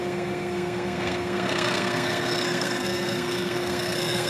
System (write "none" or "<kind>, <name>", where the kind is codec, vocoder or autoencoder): codec, SNAC